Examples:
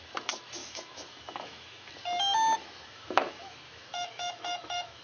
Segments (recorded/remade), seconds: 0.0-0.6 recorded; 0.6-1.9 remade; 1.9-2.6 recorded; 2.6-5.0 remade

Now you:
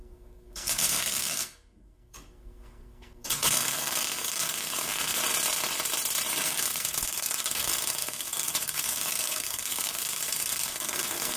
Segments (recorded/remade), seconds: 0.0-5.2 remade; 5.2-6.3 recorded; 6.3-11.4 remade

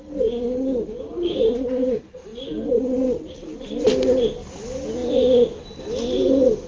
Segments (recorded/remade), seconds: 0.0-6.7 recorded

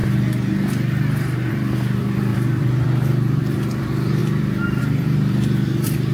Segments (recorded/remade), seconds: 0.0-1.5 recorded; 1.5-6.1 remade

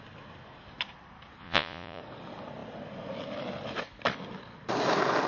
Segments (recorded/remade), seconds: 0.0-1.4 recorded; 1.4-2.0 remade; 2.0-5.3 recorded

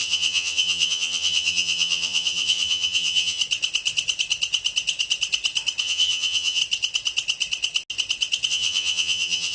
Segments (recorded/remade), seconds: 0.0-3.4 remade; 3.4-5.8 recorded; 5.8-6.6 remade; 6.6-8.5 recorded; 8.5-9.5 remade